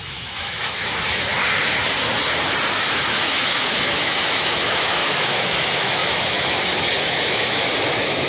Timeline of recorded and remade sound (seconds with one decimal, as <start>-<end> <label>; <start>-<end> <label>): 0.0-1.3 remade; 1.3-2.7 recorded; 2.7-8.3 remade

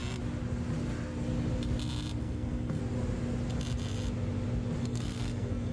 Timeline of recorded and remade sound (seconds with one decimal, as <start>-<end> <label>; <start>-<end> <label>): 0.0-2.2 recorded; 2.2-2.8 remade; 2.8-4.8 recorded; 4.8-5.7 remade

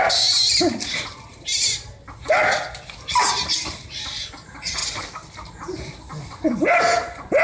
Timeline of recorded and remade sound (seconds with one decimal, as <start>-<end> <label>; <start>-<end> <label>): 0.0-7.4 recorded